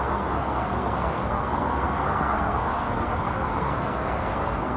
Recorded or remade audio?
remade